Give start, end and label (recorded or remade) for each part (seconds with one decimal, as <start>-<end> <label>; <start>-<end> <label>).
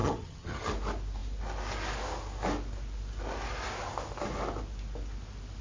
0.0-0.7 remade; 0.7-5.6 recorded